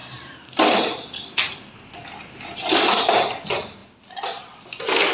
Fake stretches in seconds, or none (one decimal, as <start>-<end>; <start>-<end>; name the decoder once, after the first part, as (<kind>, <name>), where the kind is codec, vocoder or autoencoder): 0.0-3.1 (vocoder, BigVGAN v2)